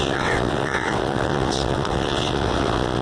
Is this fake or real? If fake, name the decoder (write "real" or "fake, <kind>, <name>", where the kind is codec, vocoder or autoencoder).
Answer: fake, vocoder, WaveNeXt